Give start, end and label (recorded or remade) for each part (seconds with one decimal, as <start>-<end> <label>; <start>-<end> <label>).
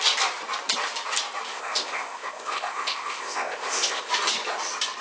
0.0-1.5 recorded; 1.5-4.1 remade; 4.1-5.0 recorded